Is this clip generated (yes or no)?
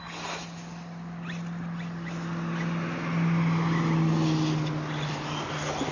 no